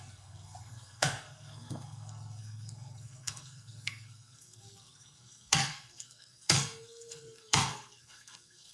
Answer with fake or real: fake